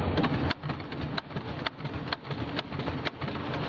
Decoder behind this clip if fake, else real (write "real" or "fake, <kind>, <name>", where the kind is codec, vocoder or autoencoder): real